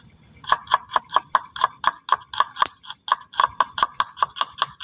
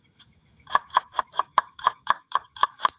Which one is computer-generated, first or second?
second